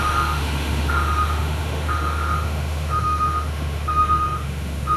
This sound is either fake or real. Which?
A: fake